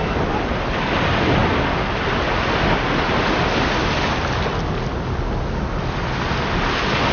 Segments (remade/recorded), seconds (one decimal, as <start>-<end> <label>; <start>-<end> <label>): 0.0-7.1 recorded